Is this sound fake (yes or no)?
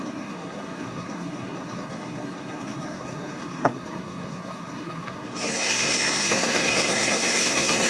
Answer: yes